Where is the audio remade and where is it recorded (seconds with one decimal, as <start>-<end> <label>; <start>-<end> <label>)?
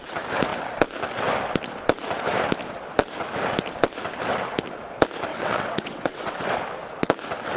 0.0-5.3 recorded; 5.3-6.4 remade; 6.4-7.6 recorded